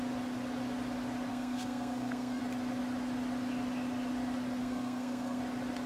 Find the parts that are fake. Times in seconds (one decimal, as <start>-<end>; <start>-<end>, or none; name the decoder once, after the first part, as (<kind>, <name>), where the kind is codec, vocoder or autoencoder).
1.3-2.4 (codec, SNAC); 4.6-5.4